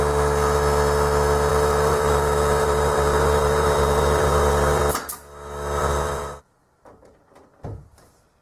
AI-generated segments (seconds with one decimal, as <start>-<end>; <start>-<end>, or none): 1.5-4.8; 5.8-7.2